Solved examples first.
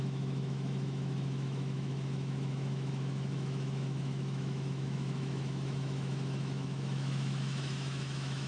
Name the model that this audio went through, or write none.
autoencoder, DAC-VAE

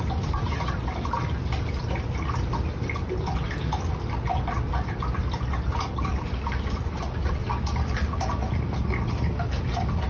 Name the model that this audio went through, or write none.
none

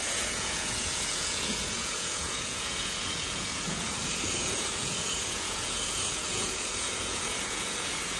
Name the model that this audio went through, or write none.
vocoder, Vocos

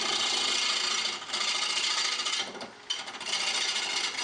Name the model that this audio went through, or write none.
none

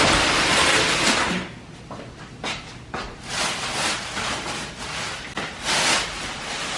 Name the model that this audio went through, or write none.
none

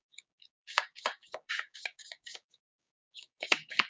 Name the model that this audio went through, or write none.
codec, DAC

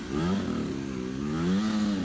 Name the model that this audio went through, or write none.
none